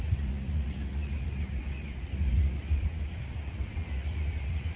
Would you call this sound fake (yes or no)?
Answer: yes